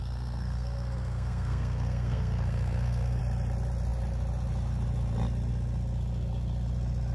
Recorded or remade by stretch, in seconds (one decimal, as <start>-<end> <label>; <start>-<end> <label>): 0.0-3.2 remade; 3.2-7.1 recorded